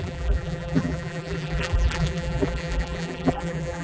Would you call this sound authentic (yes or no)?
no